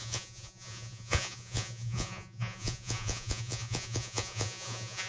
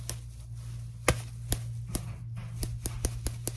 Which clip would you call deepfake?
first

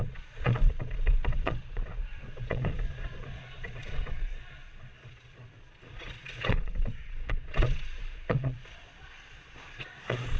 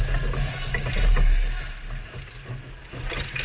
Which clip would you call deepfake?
first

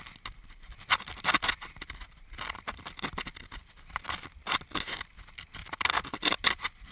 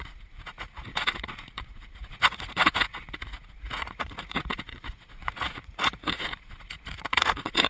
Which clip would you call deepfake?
second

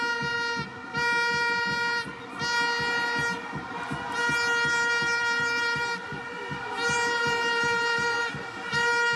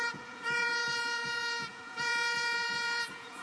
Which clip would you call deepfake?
second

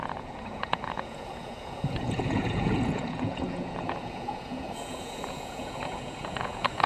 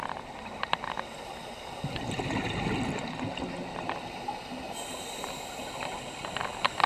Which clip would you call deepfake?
first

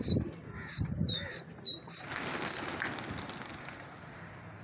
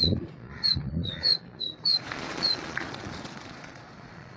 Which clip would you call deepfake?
second